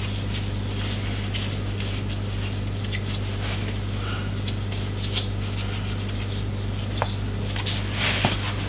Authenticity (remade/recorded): recorded